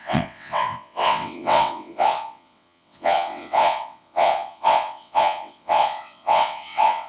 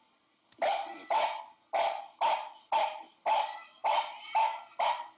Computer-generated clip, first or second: first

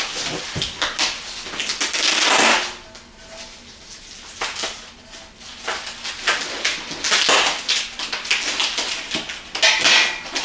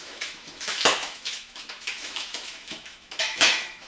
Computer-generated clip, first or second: second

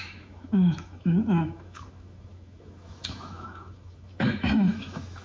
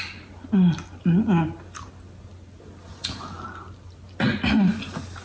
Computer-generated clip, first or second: first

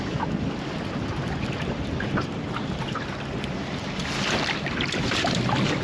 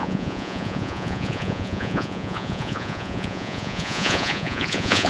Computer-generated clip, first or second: second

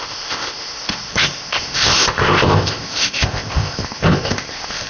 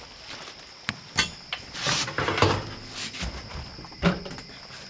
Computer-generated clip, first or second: first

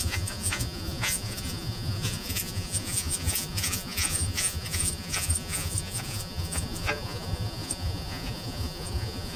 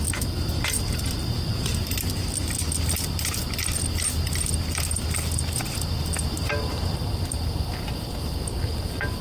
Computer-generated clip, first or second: first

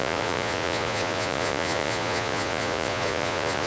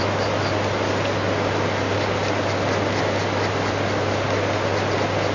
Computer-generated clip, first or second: first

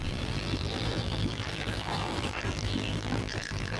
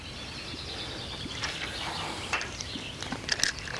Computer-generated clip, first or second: first